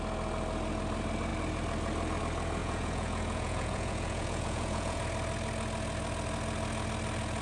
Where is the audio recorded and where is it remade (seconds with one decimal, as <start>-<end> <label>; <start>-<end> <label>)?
0.0-2.6 recorded; 2.6-5.0 remade; 5.0-7.4 recorded

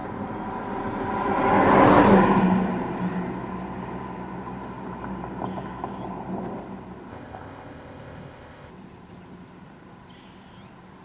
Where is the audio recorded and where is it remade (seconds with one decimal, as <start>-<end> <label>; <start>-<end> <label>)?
0.0-7.1 recorded; 7.1-8.7 remade; 8.7-11.0 recorded

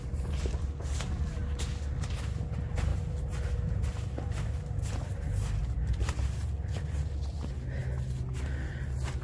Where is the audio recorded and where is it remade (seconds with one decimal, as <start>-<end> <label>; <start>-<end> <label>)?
0.0-2.9 recorded; 2.9-3.4 remade; 3.4-5.6 recorded; 5.6-6.2 remade; 6.2-9.2 recorded

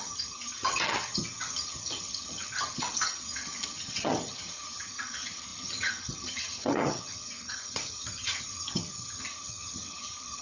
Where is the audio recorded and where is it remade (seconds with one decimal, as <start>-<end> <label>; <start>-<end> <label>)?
0.0-10.4 remade

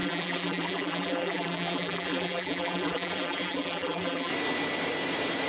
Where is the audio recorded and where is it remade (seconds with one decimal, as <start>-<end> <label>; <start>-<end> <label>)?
0.0-4.3 remade; 4.3-5.5 recorded

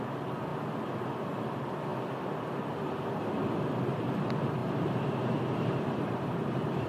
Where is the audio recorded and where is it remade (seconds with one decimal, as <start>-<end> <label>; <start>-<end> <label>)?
0.0-0.5 remade; 0.5-1.2 recorded; 1.2-1.9 remade; 1.9-3.3 recorded; 3.3-4.6 remade; 4.6-5.8 recorded; 5.8-6.9 remade